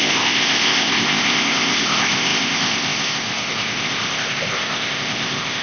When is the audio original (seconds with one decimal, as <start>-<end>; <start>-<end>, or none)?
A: none